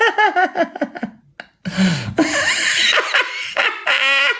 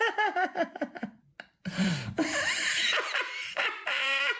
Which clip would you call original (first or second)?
first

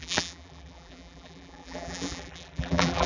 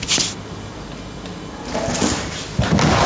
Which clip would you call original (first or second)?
second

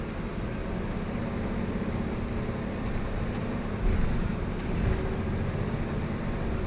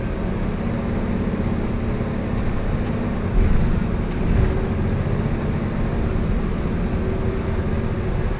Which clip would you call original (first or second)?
second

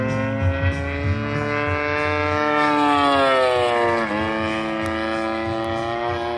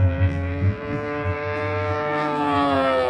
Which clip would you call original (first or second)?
first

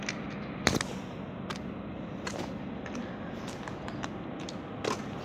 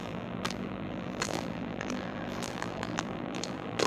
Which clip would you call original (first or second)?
first